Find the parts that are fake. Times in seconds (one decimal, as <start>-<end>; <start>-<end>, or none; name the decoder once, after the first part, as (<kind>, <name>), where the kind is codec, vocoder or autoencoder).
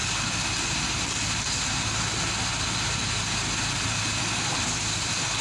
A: none